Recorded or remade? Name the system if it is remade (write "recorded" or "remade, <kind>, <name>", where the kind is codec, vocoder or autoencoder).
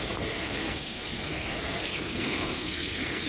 remade, codec, SNAC